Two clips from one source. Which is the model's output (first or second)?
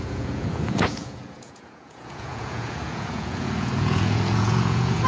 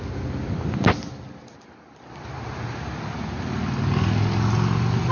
first